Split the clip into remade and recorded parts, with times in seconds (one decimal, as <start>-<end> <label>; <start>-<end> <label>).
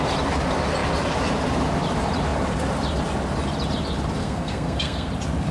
0.0-4.2 recorded; 4.2-5.1 remade; 5.1-5.5 recorded